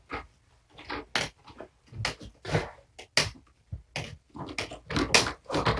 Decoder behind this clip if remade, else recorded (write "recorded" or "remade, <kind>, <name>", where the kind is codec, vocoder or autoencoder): recorded